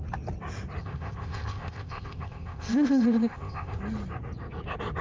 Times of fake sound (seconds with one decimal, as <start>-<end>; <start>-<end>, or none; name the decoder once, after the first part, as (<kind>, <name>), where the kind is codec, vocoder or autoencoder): 0.8-3.8 (codec, ZipCodec)